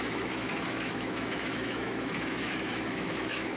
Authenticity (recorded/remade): remade